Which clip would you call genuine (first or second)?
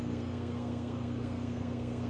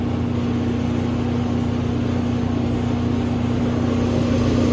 second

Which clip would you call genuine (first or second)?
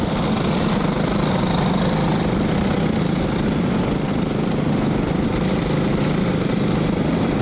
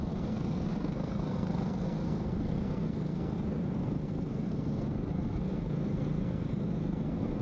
first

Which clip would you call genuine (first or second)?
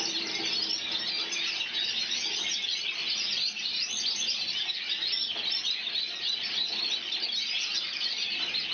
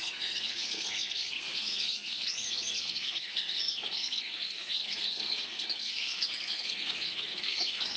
first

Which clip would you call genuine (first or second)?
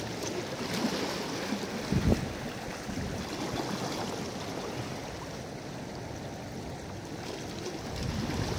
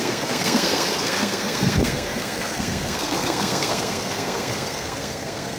first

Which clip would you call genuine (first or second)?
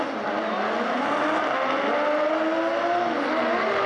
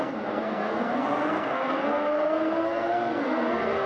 first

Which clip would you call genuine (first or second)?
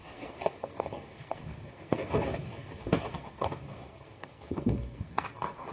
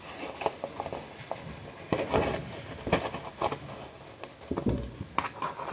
second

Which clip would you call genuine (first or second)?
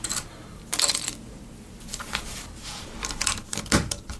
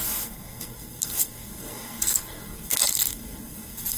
first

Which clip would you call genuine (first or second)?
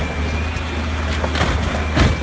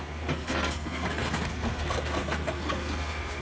first